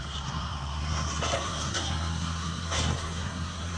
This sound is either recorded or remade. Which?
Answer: remade